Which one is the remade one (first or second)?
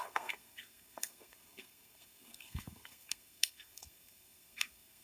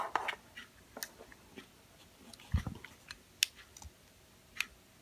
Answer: first